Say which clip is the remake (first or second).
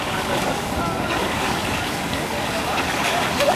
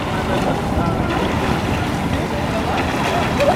first